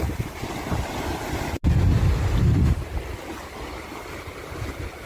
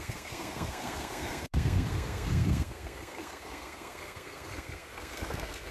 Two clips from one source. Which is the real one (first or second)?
first